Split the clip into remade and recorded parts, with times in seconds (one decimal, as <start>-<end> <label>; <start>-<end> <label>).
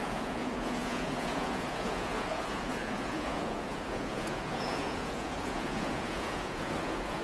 0.0-7.2 remade